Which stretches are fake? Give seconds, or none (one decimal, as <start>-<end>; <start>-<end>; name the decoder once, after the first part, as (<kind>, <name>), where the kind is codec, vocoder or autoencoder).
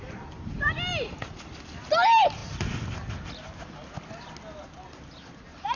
none